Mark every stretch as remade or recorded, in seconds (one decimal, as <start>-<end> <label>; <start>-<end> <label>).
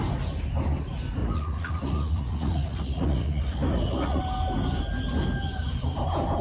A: 0.0-1.2 recorded; 1.2-4.2 remade; 4.2-6.4 recorded